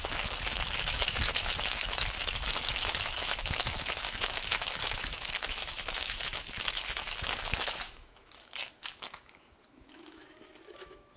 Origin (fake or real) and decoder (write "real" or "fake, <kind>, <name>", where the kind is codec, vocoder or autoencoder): fake, autoencoder, DAC-VAE